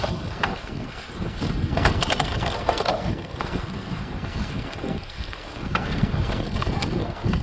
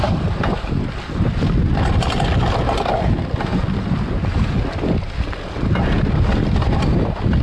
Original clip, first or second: second